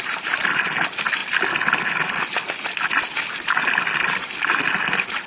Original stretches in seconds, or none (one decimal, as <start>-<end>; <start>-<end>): 0.0-5.3